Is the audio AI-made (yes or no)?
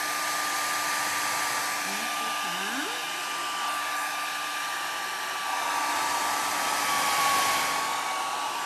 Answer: no